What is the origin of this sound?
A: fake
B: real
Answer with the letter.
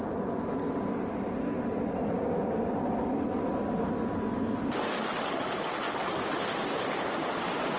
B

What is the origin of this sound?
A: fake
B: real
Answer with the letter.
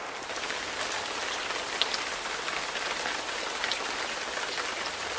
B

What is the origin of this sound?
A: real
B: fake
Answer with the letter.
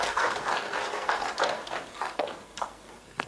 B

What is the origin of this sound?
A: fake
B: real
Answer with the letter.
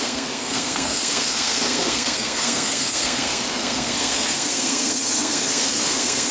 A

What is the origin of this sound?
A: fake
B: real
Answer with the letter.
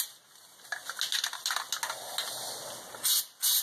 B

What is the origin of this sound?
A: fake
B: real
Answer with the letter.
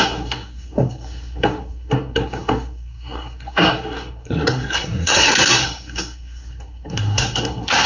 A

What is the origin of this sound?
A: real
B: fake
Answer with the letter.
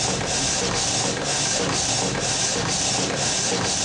A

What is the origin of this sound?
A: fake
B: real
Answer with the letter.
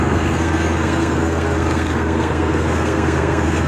A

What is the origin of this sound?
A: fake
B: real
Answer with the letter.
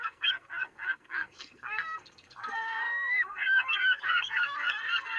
A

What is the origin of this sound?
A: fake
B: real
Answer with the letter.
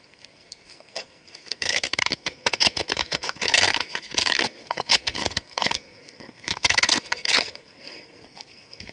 A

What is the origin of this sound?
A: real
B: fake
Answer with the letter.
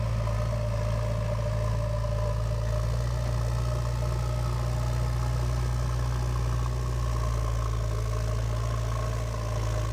A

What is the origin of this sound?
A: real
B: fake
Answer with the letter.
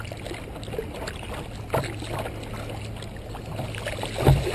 A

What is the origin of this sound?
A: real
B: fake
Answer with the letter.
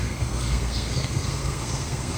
B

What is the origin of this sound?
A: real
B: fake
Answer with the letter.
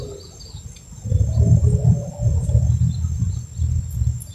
A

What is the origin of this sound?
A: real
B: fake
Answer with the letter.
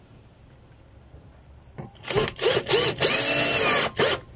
A